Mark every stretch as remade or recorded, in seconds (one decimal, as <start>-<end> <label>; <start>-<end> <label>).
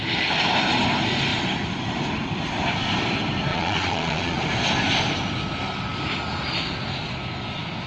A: 0.0-3.5 recorded; 3.5-4.4 remade; 4.4-7.9 recorded